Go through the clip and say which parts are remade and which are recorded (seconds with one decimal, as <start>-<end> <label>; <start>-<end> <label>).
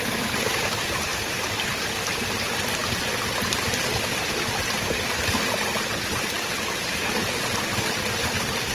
0.0-8.7 recorded